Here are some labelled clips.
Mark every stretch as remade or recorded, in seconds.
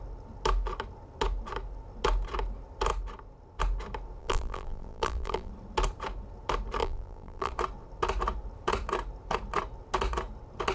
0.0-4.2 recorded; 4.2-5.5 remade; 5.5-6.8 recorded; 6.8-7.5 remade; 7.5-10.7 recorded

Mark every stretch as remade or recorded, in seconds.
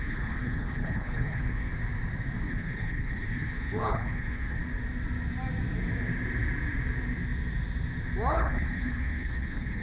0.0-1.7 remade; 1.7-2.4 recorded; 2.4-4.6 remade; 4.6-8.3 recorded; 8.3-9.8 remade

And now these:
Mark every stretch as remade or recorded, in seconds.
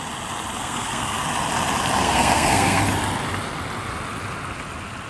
0.0-0.6 recorded; 0.6-1.2 remade; 1.2-2.0 recorded; 2.0-2.8 remade; 2.8-5.1 recorded